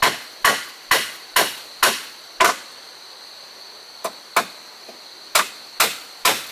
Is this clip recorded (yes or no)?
yes